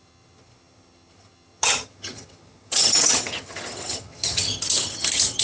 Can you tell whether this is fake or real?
fake